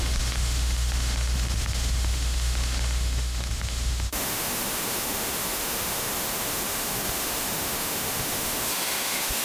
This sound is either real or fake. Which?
fake